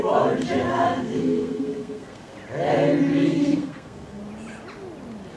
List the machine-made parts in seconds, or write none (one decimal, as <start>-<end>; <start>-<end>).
0.7-2.3; 3.1-4.2